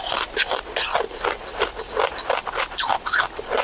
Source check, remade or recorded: recorded